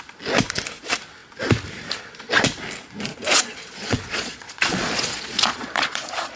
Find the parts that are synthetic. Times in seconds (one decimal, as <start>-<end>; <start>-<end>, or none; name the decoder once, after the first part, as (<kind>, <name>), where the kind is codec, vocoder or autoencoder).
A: 3.1-6.4 (vocoder, Vocos)